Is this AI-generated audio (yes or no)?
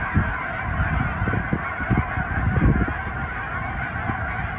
no